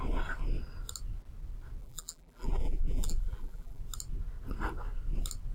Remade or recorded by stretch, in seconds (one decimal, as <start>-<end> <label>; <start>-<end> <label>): 0.0-1.8 recorded; 1.8-3.8 remade; 3.8-5.5 recorded